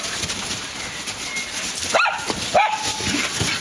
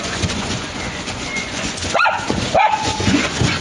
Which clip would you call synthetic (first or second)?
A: second